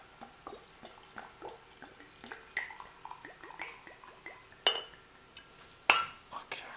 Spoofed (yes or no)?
no